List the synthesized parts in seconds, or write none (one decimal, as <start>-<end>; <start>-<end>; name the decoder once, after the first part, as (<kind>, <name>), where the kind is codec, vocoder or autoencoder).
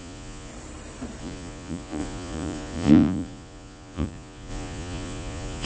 0.0-0.5 (vocoder, Vocos); 1.2-5.7